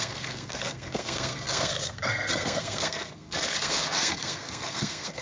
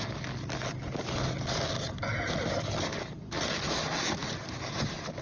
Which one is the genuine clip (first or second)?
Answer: second